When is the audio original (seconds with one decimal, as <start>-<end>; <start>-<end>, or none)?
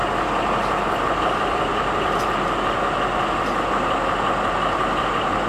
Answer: 0.0-1.2; 1.7-5.0